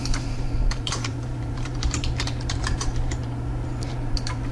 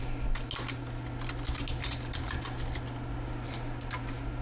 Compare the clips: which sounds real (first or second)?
second